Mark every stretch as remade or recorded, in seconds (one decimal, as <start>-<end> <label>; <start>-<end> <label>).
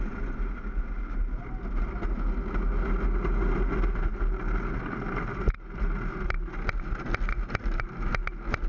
0.0-8.7 recorded